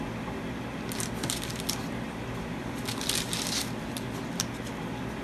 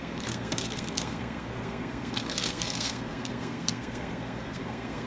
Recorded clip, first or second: first